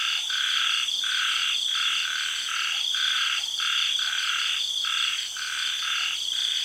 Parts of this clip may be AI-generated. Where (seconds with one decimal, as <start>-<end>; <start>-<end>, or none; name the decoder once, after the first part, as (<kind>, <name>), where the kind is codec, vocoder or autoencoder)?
0.0-6.6 (vocoder, BigVGAN v2)